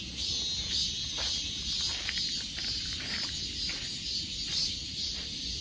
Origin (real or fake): real